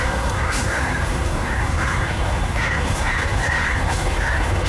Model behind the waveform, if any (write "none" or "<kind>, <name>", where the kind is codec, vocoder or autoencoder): codec, SNAC